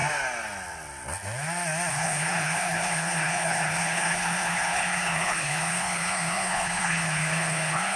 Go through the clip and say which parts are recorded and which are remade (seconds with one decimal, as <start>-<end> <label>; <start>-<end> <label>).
0.0-1.9 recorded; 1.9-8.0 remade